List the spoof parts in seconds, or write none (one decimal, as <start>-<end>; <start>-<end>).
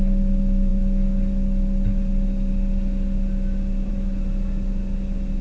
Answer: none